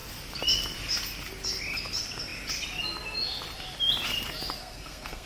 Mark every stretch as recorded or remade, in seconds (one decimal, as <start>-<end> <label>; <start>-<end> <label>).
0.0-4.6 recorded; 4.6-5.3 remade